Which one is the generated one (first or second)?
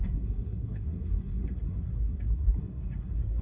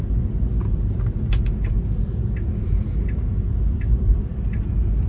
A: first